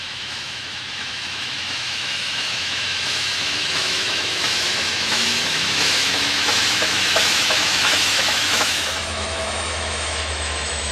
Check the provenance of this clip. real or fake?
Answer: fake